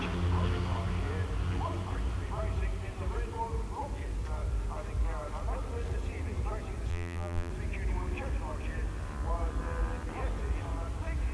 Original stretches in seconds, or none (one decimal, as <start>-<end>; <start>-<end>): 0.0-6.9; 7.5-11.3